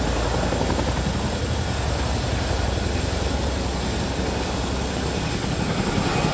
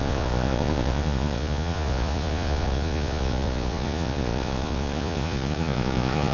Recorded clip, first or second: first